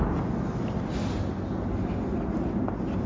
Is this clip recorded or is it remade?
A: recorded